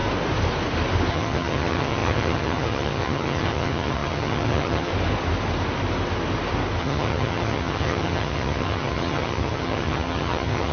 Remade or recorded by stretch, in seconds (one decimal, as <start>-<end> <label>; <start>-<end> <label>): 0.0-1.1 recorded; 1.1-4.9 remade; 4.9-6.8 recorded; 6.8-10.7 remade